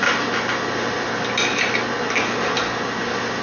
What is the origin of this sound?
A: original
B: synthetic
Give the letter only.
A